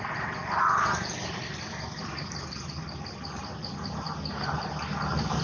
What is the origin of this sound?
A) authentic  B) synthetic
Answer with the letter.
A